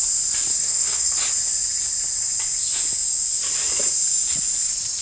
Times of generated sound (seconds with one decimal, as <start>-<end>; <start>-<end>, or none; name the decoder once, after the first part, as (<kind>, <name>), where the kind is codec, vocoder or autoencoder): 0.5-1.1 (codec, SNAC)

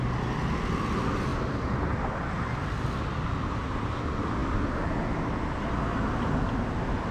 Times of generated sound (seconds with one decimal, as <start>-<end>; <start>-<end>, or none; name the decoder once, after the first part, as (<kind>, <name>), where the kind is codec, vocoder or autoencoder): none

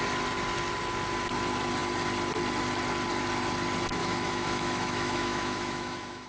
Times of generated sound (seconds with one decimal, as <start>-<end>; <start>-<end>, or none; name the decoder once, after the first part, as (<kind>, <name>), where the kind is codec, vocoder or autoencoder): 4.0-6.3 (autoencoder, DAC-VAE)

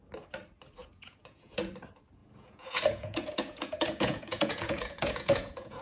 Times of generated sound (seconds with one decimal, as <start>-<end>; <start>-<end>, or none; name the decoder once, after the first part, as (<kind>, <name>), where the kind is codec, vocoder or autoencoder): 0.8-1.7 (vocoder, Vocos); 2.2-5.8

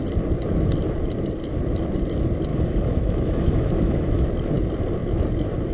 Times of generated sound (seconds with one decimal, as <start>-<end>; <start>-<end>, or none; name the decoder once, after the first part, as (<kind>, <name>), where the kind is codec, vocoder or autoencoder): 2.5-4.3 (autoencoder, DAC-VAE)

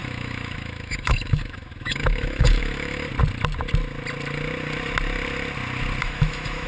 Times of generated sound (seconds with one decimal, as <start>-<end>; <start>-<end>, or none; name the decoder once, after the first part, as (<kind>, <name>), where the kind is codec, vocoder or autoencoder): 0.0-3.1 (autoencoder, DAC-VAE); 6.0-6.7